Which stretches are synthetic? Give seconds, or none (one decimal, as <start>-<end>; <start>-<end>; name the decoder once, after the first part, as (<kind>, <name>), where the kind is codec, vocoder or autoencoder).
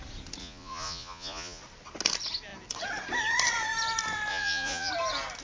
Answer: 0.4-1.6 (vocoder, Vocos); 4.3-4.9